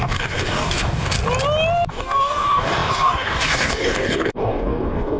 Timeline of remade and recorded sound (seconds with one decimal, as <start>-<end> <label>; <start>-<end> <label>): 0.0-1.2 remade; 1.2-1.9 recorded; 1.9-5.2 remade